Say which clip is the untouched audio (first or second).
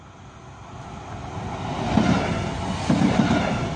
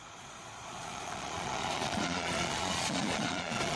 first